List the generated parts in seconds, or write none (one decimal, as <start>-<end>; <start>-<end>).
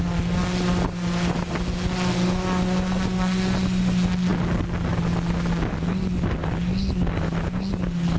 none